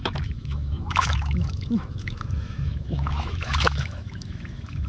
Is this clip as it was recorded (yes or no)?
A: no